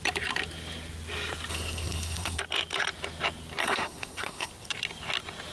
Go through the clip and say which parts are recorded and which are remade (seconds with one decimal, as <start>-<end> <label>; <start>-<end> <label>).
0.0-1.5 recorded; 1.5-2.4 remade; 2.4-3.6 recorded; 3.6-4.5 remade; 4.5-5.5 recorded